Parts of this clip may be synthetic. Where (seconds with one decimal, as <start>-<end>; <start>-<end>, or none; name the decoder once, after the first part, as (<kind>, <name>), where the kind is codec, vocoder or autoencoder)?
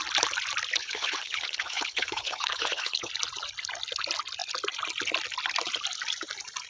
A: 0.8-3.1 (codec, HILCodec)